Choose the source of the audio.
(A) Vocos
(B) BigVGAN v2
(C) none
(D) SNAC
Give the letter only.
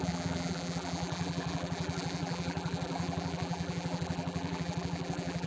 B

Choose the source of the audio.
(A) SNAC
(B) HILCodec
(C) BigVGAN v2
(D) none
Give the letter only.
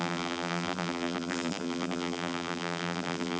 C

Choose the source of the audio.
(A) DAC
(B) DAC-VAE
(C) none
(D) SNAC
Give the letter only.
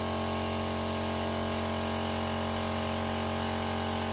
C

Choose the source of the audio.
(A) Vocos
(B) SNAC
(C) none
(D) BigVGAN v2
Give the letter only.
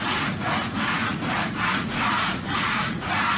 A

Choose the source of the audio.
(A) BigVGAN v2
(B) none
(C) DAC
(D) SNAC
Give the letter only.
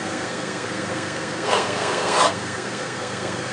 D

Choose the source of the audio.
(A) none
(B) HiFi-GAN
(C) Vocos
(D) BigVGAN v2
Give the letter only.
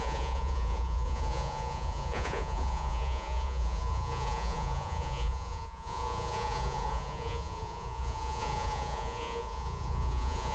C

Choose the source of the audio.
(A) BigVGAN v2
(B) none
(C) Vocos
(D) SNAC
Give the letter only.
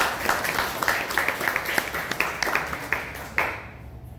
B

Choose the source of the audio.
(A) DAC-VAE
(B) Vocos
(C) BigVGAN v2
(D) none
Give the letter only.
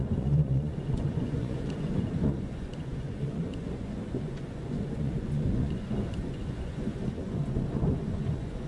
B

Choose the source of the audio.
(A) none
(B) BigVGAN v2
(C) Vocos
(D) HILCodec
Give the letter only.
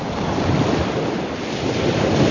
A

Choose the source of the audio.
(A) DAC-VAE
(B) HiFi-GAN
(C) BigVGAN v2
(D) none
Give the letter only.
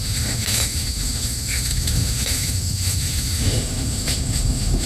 A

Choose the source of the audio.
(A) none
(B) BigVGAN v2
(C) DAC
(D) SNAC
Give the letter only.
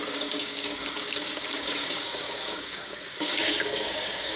C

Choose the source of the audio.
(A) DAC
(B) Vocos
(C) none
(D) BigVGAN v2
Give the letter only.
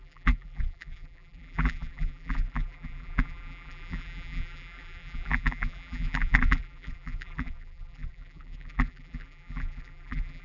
D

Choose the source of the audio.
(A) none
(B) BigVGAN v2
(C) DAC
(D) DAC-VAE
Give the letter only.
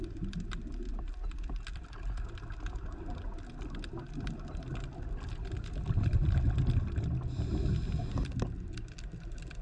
A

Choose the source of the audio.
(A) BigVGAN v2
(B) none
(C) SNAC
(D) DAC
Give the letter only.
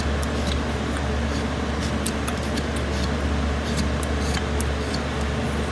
B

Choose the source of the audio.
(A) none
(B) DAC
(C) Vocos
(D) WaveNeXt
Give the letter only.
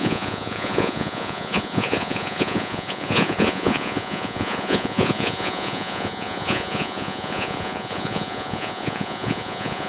C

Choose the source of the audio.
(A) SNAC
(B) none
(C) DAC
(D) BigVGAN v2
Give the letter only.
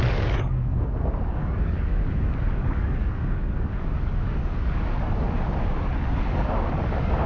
C